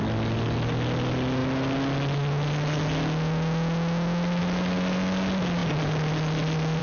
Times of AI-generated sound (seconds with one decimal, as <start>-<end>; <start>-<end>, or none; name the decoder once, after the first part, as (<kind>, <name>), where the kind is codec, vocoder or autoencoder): none